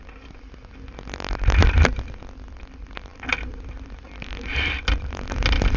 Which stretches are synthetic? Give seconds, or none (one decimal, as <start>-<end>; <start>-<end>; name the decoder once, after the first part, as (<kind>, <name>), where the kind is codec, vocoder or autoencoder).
none